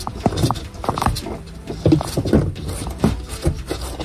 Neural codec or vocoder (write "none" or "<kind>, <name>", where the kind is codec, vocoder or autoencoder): none